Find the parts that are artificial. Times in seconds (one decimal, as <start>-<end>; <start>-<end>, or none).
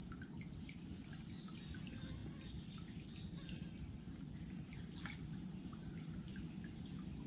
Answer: none